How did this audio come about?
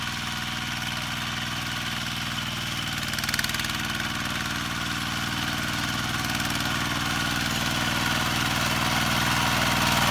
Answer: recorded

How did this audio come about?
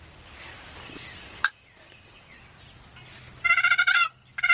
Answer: recorded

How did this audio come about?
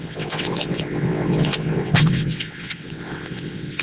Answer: remade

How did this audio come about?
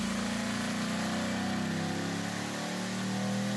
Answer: recorded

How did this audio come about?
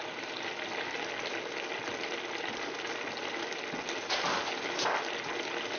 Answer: recorded